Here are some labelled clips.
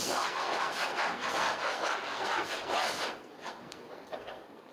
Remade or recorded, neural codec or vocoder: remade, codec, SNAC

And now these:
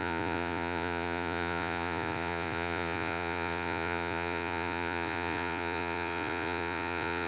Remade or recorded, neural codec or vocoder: remade, vocoder, Vocos